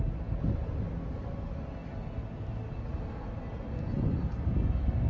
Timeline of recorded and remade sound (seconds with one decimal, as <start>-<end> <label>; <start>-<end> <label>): 0.0-5.1 recorded